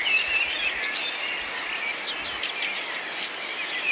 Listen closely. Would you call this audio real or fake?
real